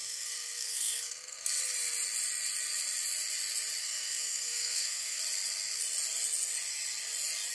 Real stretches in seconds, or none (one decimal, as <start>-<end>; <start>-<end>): 1.6-3.8; 5.2-7.5